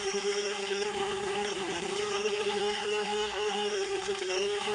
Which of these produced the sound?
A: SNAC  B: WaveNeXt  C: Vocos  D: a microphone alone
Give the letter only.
A